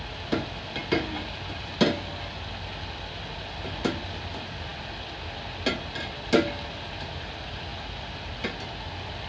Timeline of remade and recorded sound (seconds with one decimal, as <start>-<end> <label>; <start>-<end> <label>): 0.0-9.3 recorded